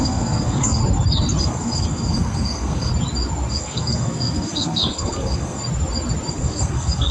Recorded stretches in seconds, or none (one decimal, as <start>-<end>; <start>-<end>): 0.8-1.4; 2.9-3.5; 5.6-6.3